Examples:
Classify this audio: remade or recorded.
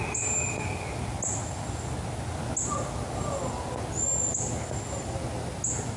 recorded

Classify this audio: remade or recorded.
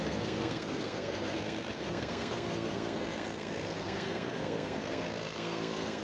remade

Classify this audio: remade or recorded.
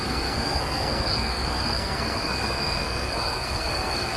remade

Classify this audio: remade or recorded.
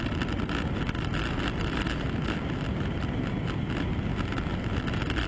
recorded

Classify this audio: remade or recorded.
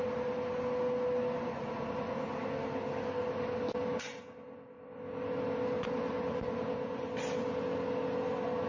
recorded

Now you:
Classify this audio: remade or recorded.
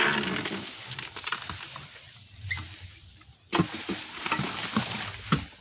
recorded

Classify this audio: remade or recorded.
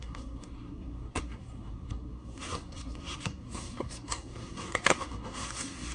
remade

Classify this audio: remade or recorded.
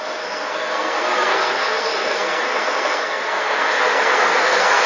remade